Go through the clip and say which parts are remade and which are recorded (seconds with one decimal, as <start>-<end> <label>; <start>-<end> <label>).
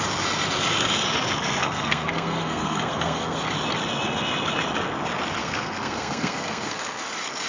0.0-1.6 recorded; 1.6-3.4 remade; 3.4-5.4 recorded; 5.4-7.0 remade; 7.0-7.5 recorded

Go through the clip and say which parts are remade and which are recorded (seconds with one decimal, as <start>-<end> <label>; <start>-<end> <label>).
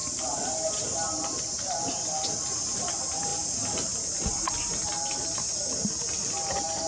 0.0-6.9 recorded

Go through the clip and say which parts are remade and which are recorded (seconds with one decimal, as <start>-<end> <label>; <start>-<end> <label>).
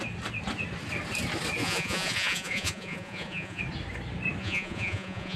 0.0-1.6 recorded; 1.6-3.6 remade; 3.6-4.4 recorded; 4.4-5.4 remade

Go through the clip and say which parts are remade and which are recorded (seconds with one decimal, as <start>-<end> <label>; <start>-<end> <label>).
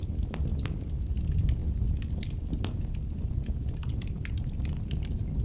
0.0-1.6 remade; 1.6-2.6 recorded; 2.6-5.4 remade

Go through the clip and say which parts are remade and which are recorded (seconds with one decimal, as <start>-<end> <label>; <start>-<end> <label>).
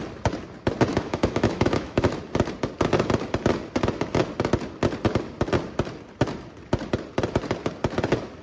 0.0-0.9 recorded; 0.9-2.1 remade; 2.1-8.4 recorded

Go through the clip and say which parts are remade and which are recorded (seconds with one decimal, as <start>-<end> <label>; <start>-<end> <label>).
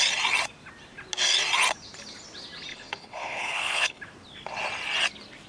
0.0-2.7 recorded; 2.7-4.0 remade; 4.0-5.5 recorded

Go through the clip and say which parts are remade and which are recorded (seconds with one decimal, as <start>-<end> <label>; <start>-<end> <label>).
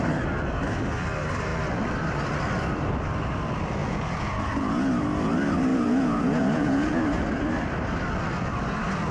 0.0-3.8 recorded; 3.8-4.9 remade; 4.9-5.7 recorded; 5.7-6.9 remade; 6.9-9.1 recorded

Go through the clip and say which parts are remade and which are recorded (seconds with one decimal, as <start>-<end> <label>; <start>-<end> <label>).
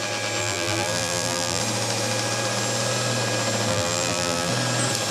0.0-0.4 recorded; 0.4-1.6 remade; 1.6-3.7 recorded; 3.7-4.5 remade; 4.5-5.1 recorded